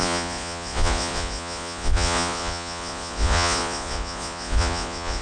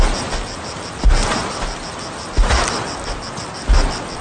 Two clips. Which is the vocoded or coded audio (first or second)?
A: first